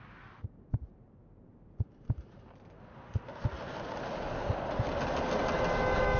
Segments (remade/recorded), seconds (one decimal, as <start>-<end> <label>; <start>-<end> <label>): 0.0-6.2 recorded